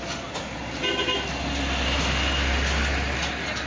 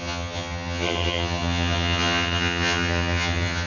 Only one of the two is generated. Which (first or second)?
second